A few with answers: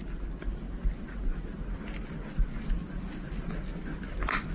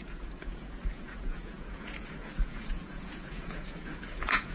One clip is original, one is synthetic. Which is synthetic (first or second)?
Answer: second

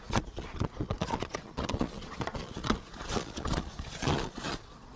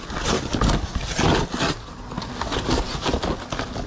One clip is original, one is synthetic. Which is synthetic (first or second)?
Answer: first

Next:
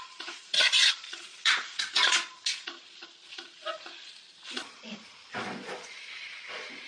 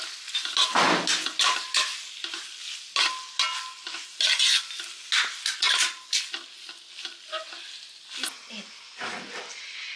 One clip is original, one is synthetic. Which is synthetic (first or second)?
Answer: first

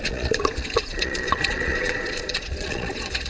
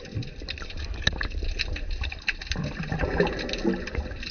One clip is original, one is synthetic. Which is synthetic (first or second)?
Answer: first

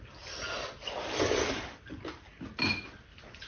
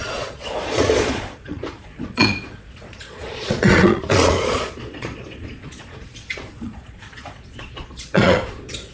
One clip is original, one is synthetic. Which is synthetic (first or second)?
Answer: second